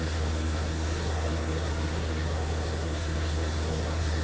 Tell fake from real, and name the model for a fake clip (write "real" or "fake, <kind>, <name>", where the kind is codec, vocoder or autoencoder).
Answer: fake, codec, SNAC